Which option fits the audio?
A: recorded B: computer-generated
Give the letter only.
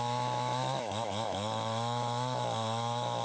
B